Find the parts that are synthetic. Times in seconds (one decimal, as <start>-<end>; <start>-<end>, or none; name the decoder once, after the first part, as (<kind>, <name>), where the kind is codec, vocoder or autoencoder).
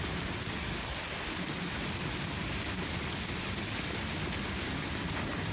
none